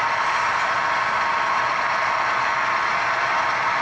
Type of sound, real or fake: real